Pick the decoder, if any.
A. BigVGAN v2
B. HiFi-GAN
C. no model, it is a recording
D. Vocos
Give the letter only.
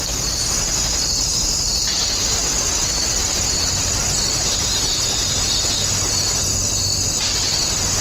C